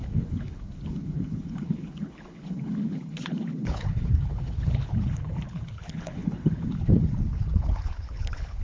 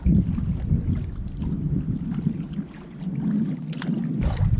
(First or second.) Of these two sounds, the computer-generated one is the first